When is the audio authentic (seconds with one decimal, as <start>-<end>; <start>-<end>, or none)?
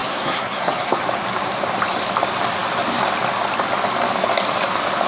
1.0-5.1